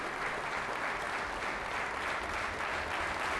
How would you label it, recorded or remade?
recorded